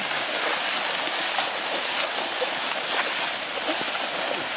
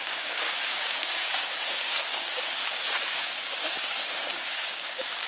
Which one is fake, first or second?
second